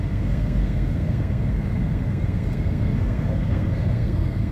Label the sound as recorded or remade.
remade